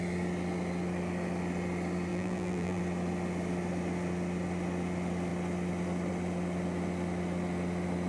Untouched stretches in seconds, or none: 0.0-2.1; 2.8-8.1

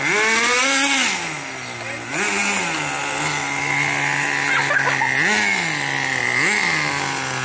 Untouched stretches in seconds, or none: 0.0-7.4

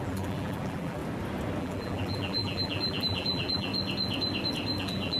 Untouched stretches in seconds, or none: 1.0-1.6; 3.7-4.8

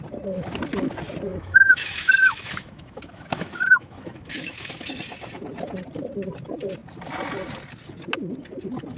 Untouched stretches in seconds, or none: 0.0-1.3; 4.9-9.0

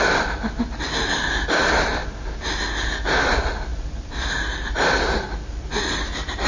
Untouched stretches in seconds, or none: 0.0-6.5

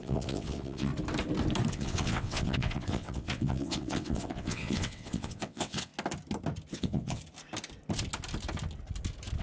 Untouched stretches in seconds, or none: 0.9-1.7; 5.9-6.7; 7.2-9.4